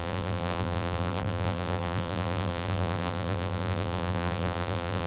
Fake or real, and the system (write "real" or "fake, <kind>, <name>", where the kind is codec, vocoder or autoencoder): fake, vocoder, BigVGAN v2